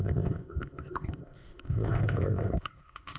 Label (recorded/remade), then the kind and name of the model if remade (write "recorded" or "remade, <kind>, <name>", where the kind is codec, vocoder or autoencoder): remade, codec, ZipCodec